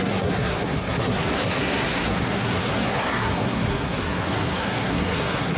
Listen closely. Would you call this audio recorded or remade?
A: remade